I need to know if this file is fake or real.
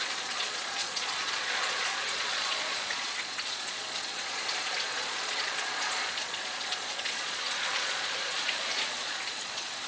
fake